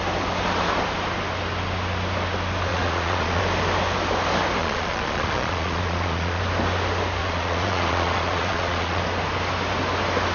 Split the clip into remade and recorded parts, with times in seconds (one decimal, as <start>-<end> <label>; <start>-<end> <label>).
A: 0.0-2.7 recorded; 2.7-3.4 remade; 3.4-4.6 recorded; 4.6-6.4 remade; 6.4-7.2 recorded; 7.2-9.0 remade; 9.0-10.3 recorded